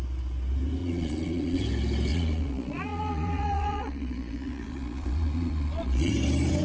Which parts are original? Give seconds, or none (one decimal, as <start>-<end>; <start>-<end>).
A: 0.0-0.8; 1.6-2.1; 6.1-6.6